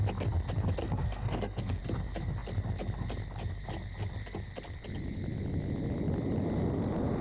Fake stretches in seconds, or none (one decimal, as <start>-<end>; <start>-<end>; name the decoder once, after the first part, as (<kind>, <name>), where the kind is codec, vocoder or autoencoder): 0.8-1.8 (codec, SNAC)